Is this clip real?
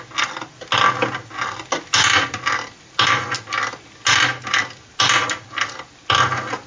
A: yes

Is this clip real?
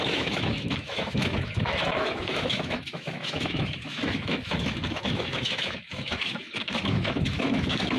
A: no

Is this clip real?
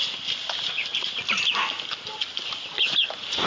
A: yes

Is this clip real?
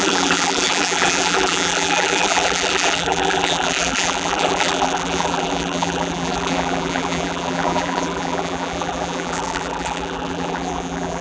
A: no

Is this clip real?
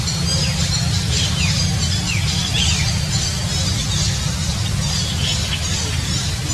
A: yes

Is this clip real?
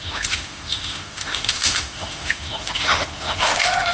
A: no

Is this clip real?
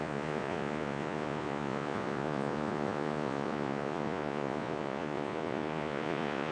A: no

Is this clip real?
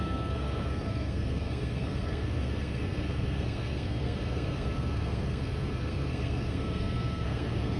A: no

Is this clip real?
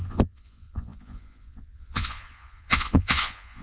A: no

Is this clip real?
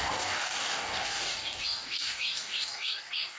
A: no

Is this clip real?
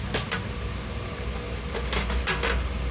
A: yes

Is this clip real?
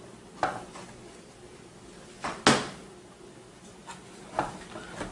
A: yes